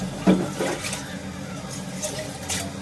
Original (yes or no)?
yes